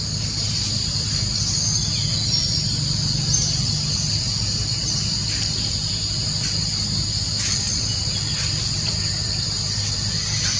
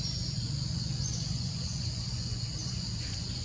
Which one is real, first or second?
first